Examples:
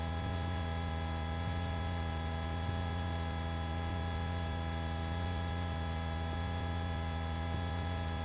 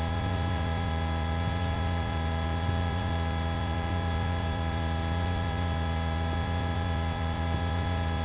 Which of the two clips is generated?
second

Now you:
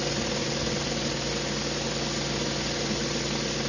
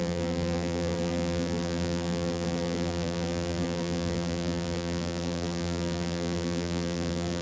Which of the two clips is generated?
second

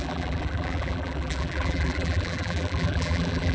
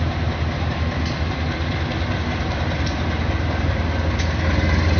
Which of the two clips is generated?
first